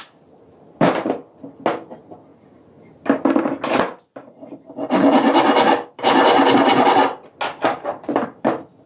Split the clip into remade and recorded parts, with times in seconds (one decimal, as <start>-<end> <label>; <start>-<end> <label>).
0.0-8.9 recorded